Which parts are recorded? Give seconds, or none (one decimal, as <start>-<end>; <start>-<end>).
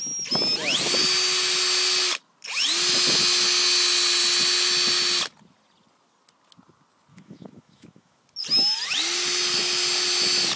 0.0-7.1; 8.2-10.6